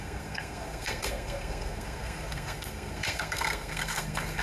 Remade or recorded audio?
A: remade